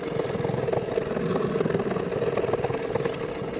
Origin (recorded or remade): recorded